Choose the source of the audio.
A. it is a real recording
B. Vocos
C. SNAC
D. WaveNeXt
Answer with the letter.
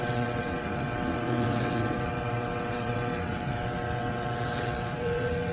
D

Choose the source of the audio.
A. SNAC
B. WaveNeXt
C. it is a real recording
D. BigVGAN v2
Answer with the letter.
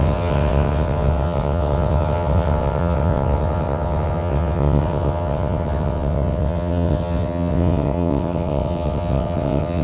B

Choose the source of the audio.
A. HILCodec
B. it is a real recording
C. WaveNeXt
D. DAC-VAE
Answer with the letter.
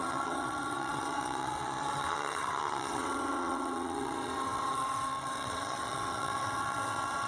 C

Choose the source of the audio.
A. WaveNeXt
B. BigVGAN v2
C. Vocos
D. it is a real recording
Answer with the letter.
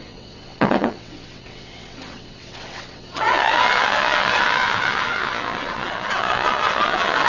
A